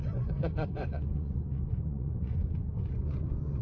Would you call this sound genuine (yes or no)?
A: no